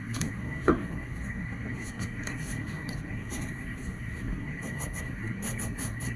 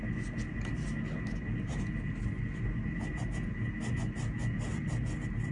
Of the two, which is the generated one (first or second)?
first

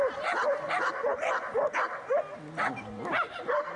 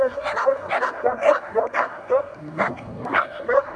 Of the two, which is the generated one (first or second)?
second